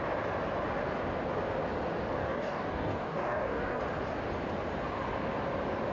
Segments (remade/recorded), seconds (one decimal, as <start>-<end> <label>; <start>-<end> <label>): 0.0-2.2 recorded; 2.2-3.8 remade; 3.8-5.9 recorded